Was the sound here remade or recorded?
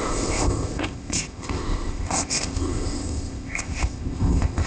remade